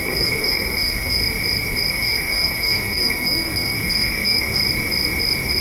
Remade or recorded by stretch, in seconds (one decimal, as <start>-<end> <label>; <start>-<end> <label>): 0.0-1.2 remade; 1.2-1.9 recorded; 1.9-4.6 remade; 4.6-5.6 recorded